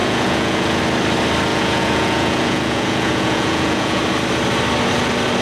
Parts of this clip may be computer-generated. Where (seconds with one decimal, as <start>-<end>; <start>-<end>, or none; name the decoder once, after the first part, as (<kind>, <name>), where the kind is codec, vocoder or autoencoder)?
0.0-0.8 (vocoder, Vocos); 1.5-4.0